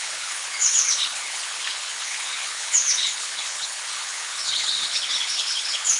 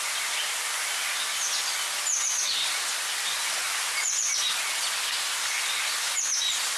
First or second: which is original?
second